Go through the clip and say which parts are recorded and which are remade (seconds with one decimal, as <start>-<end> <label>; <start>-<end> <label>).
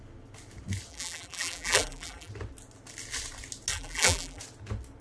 0.0-0.9 recorded; 0.9-2.3 remade; 2.3-3.7 recorded; 3.7-4.4 remade; 4.4-5.0 recorded